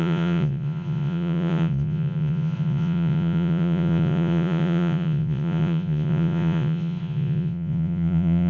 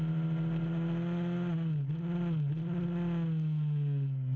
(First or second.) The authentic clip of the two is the second